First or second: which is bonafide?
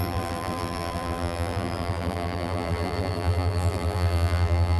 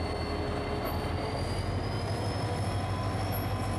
second